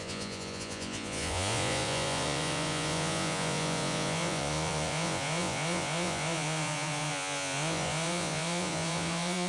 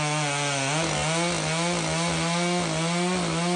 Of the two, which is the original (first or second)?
second